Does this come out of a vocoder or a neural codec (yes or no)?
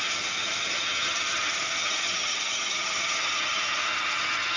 yes